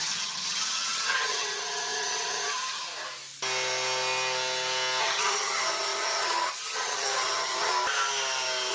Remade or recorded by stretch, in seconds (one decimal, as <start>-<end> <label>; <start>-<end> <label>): 0.0-2.9 remade; 2.9-5.0 recorded; 5.0-7.7 remade; 7.7-8.7 recorded